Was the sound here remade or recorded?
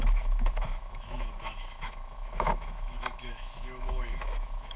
remade